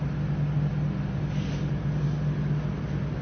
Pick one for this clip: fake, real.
real